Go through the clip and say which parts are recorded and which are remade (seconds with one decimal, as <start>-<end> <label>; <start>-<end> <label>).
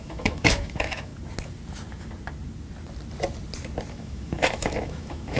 0.0-1.1 remade; 1.1-3.9 recorded; 3.9-5.4 remade